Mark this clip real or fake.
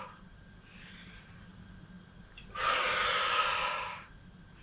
real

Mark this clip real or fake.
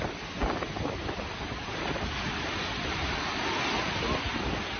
real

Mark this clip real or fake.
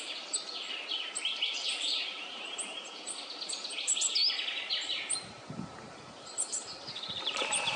fake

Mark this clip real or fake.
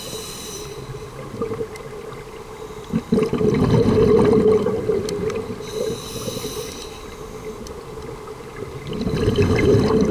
real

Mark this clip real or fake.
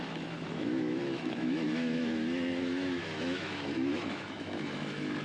fake